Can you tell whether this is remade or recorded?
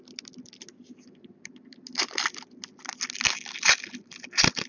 recorded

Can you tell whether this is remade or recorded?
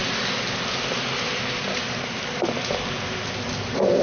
recorded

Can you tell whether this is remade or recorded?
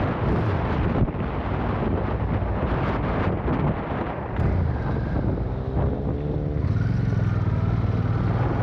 recorded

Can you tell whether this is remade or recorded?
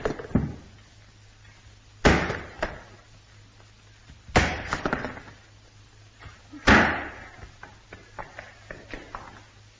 recorded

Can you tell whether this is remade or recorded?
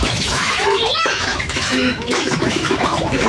remade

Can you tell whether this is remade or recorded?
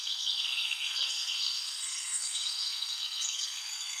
remade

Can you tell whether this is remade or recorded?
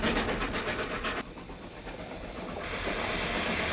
recorded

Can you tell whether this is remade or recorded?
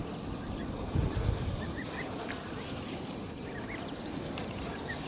recorded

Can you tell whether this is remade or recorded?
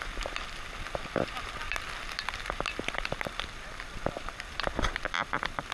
remade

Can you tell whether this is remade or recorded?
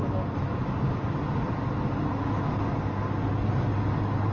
recorded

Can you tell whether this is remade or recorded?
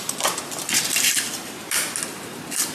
recorded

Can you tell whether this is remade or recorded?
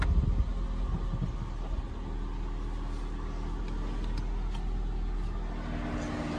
recorded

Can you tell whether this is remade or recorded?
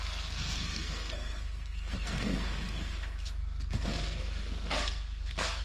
remade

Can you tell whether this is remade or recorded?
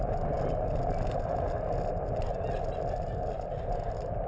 recorded